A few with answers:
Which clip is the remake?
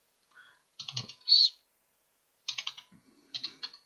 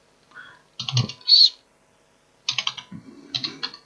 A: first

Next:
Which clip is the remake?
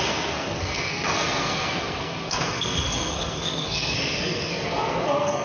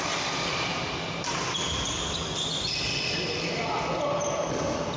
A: first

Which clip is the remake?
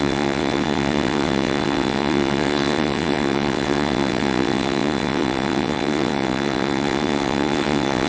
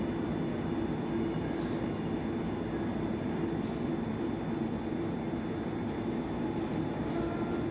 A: first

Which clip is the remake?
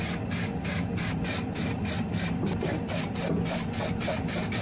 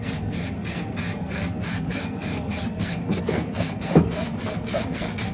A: second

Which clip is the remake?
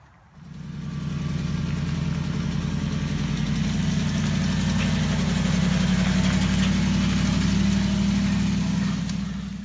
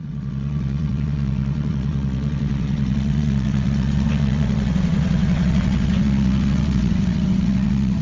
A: second